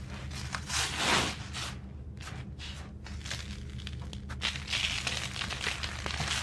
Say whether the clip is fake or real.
real